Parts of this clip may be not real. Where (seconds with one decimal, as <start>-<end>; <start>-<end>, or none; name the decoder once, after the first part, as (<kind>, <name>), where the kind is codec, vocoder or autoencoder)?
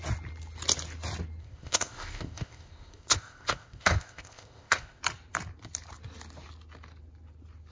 1.4-5.0 (codec, ZipCodec)